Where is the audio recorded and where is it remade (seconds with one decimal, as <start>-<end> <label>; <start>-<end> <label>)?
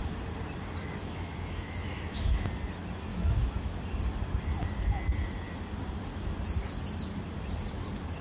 0.0-1.0 recorded; 1.0-2.5 remade; 2.5-3.1 recorded; 3.1-3.8 remade; 3.8-8.2 recorded